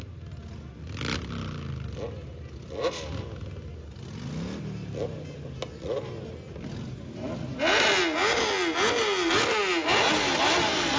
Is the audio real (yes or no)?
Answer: yes